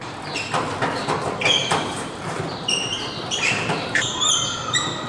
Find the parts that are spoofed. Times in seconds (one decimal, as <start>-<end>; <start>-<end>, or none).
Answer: 1.6-5.1